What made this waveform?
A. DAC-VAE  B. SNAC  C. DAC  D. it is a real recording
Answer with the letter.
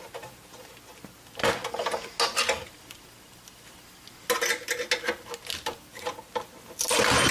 D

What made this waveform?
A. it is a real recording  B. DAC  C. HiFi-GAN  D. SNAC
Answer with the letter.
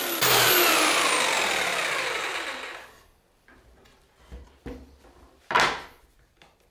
A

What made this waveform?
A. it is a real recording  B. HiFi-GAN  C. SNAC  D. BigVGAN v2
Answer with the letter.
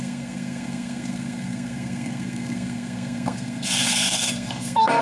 C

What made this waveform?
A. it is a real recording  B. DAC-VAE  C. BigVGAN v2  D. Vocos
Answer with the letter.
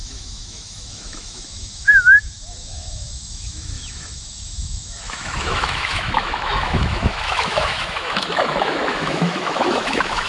B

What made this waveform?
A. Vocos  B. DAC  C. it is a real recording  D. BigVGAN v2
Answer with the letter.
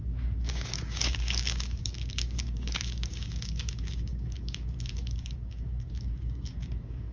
B